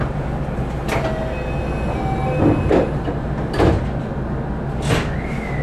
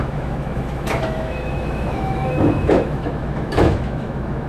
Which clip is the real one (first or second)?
first